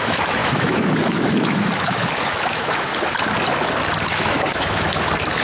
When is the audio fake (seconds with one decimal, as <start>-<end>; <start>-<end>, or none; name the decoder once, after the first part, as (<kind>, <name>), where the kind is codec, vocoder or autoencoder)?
0.0-2.9 (autoencoder, DAC-VAE); 4.1-5.4